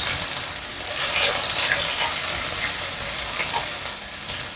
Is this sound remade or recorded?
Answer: recorded